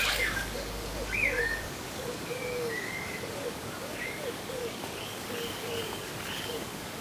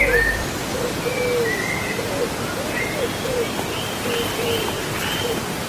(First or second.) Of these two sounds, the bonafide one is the second